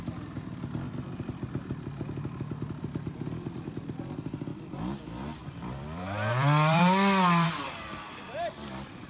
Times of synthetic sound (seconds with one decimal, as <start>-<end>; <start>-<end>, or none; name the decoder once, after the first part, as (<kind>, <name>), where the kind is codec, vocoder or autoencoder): 4.5-5.0 (vocoder, BigVGAN v2); 5.4-8.5